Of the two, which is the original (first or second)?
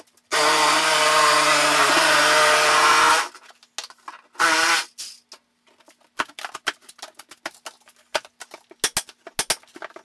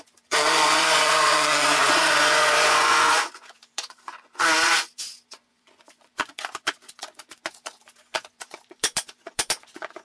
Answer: first